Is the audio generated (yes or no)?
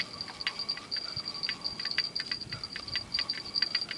no